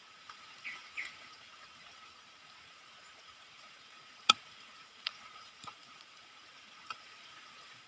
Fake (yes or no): yes